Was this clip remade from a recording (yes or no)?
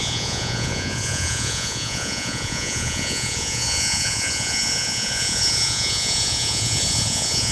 yes